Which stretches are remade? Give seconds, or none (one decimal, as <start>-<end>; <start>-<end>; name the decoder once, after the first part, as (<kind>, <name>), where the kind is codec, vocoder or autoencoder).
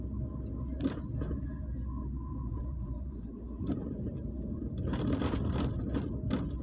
2.5-5.3 (vocoder, BigVGAN v2)